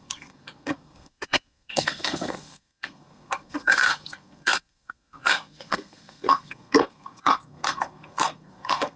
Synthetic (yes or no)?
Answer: yes